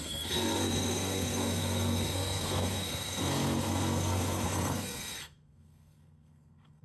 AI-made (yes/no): yes